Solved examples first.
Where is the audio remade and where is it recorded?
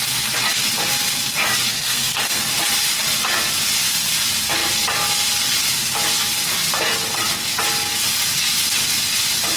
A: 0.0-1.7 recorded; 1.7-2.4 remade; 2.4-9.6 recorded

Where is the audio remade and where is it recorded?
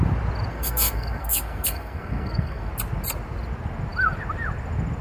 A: 0.0-0.5 recorded; 0.5-2.7 remade; 2.7-5.0 recorded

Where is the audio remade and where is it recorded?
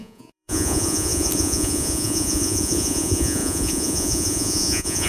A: 0.0-5.1 remade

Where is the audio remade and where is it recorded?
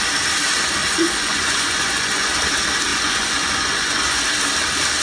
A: 0.0-0.8 recorded; 0.8-2.3 remade; 2.3-2.9 recorded; 2.9-4.2 remade; 4.2-5.0 recorded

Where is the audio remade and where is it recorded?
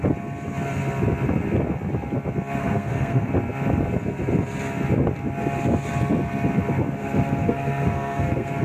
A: 0.0-2.6 recorded; 2.6-3.3 remade; 3.3-7.0 recorded; 7.0-8.6 remade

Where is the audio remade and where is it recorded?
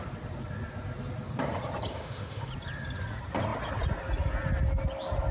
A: 0.0-1.9 recorded; 1.9-2.5 remade; 2.5-5.3 recorded